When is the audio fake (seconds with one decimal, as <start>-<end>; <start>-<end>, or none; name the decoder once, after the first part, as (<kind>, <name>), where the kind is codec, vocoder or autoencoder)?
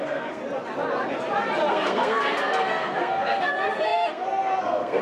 0.0-0.4 (codec, SNAC); 1.7-5.0